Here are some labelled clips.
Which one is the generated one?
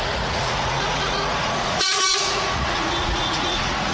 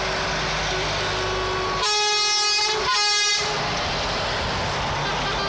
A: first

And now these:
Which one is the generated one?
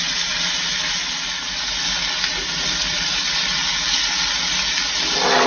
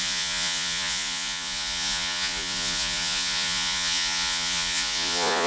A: second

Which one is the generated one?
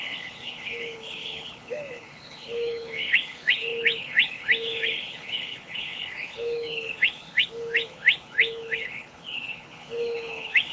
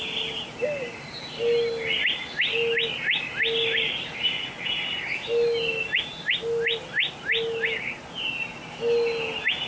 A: first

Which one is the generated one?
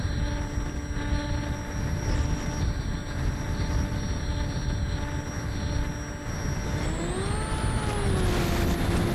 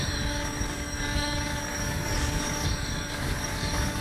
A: second